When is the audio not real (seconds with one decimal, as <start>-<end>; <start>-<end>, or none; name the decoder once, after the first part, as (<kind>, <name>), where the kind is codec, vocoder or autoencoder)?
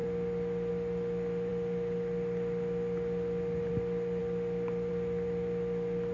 none